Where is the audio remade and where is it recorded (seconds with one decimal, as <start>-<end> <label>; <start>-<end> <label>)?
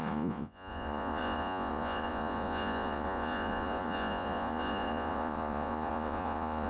0.0-6.7 remade